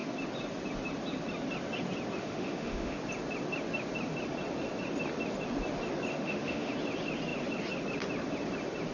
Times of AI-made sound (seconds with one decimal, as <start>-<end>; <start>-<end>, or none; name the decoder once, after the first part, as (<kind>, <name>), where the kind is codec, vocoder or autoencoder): 2.2-3.0 (autoencoder, DAC-VAE); 6.1-6.7